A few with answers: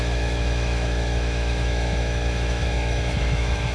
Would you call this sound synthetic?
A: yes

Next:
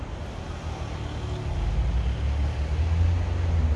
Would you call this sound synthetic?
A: no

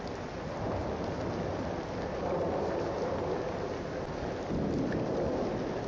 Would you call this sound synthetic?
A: no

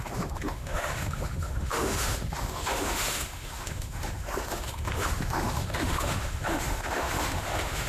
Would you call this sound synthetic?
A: yes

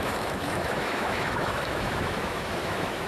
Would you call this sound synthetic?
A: yes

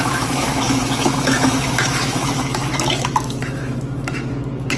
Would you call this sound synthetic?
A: yes